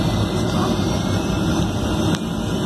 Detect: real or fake real